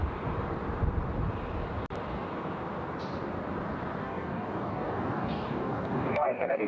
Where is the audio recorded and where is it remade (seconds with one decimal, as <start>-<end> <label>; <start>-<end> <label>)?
0.0-4.0 recorded; 4.0-6.7 remade